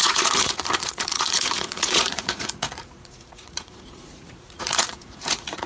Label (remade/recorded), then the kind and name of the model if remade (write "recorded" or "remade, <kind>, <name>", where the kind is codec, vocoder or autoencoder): remade, vocoder, Vocos